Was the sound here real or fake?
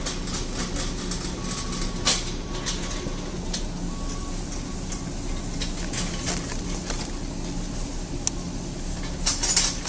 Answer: real